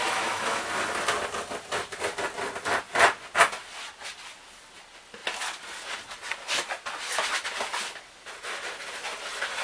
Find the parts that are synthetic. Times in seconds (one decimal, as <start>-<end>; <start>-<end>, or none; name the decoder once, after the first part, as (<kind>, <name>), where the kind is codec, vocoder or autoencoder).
0.0-0.7 (autoencoder, DAC-VAE)